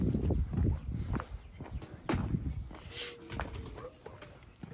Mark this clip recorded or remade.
recorded